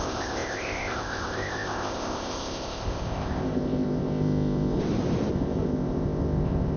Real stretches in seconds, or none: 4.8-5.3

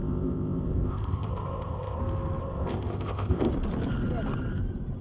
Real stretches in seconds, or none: 2.0-2.4; 3.5-5.0

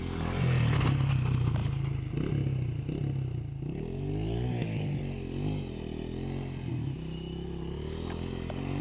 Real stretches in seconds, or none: 0.0-8.8

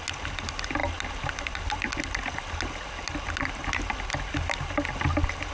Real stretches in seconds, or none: 0.0-5.5

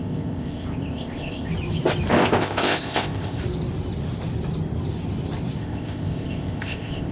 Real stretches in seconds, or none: 1.5-2.1; 3.4-5.6

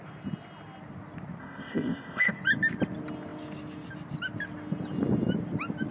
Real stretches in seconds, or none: 0.0-1.4; 2.3-5.9

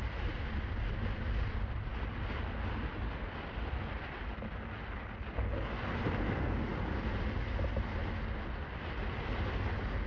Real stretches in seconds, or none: 0.0-10.1